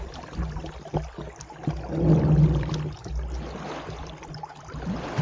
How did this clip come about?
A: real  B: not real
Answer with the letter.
A